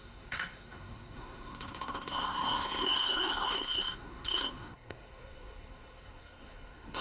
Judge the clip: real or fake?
fake